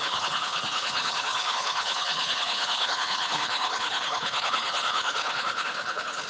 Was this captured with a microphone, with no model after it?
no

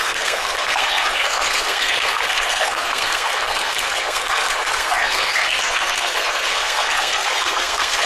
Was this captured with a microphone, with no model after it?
no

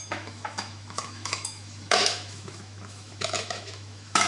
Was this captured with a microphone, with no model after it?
no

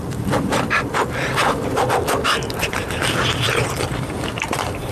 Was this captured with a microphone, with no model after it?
no